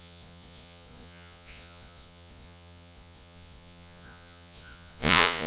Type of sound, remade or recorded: remade